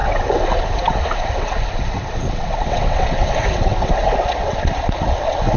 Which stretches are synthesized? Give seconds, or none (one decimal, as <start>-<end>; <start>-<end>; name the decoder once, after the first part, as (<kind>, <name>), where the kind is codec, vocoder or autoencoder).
0.0-5.6 (vocoder, WaveNeXt)